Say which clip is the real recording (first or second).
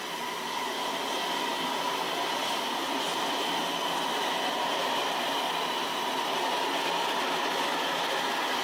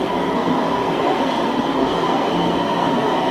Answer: first